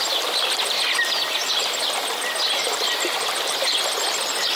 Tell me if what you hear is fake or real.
real